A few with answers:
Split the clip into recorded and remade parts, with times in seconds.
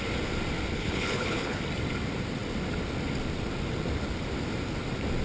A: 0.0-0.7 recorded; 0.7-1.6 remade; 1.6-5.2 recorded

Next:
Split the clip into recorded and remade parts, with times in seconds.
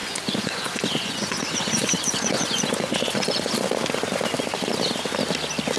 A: 0.0-3.5 remade; 3.5-5.8 recorded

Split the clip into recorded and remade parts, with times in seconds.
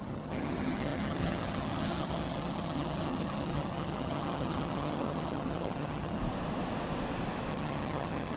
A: 0.0-6.2 remade; 6.2-7.5 recorded; 7.5-8.4 remade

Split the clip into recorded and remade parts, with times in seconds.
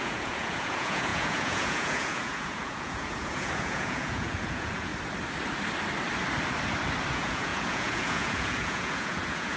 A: 0.0-4.9 remade; 4.9-7.1 recorded; 7.1-9.6 remade